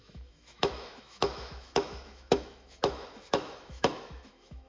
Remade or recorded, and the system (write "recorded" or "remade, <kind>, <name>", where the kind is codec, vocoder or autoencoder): remade, autoencoder, DAC-VAE